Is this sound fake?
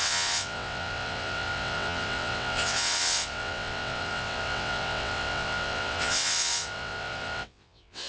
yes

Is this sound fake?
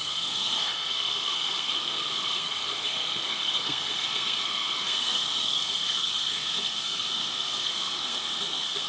yes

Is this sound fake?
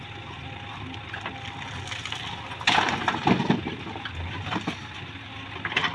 no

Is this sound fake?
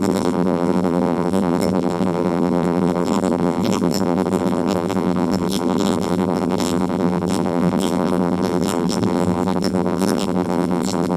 yes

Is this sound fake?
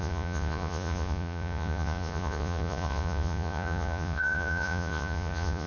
yes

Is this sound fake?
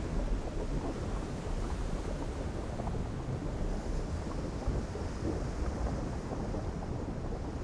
no